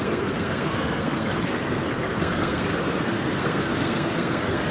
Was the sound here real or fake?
fake